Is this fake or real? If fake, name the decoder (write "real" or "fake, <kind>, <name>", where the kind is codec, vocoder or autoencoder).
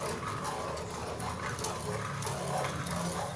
real